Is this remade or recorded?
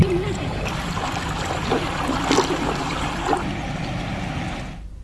recorded